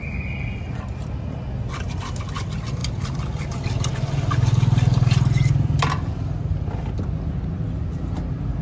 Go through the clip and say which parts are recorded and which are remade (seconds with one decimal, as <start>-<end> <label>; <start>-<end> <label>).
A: 0.0-8.6 recorded